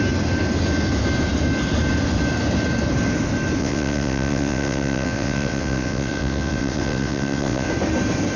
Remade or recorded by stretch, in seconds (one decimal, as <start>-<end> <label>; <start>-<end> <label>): 0.0-3.6 recorded; 3.6-7.7 remade; 7.7-8.4 recorded